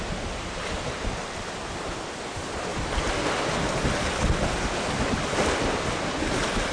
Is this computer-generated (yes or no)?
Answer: no